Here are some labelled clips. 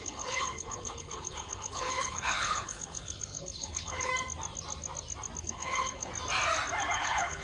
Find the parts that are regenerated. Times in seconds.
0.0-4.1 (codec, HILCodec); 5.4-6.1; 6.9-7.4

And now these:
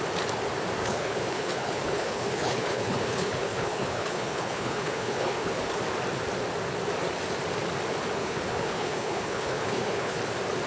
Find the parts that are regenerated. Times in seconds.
0.8-5.8 (codec, HILCodec); 8.2-10.2

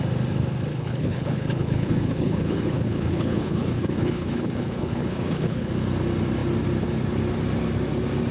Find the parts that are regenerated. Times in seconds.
0.7-5.7 (codec, HILCodec)

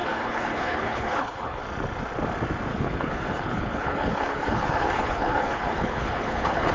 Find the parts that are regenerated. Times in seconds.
0.0-1.6 (codec, HILCodec); 2.7-6.7

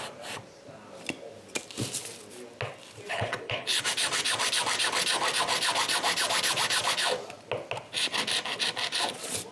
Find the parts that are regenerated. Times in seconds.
3.1-3.8 (codec, HILCodec)

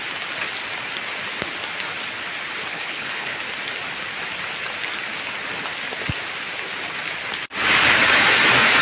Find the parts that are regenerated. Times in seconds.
2.7-3.4 (codec, HILCodec)

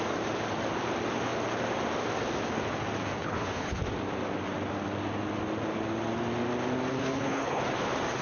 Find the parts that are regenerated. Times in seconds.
3.2-3.8 (codec, HILCodec); 6.9-7.6

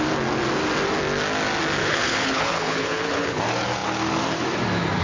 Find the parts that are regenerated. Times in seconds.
1.8-3.4 (codec, HILCodec)